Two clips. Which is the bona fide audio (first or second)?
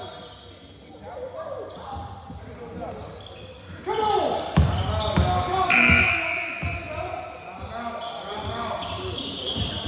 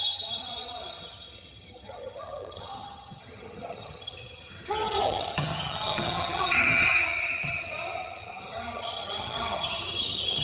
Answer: first